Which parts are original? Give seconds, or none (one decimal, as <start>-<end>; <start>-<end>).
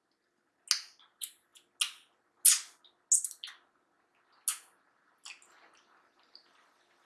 0.0-7.1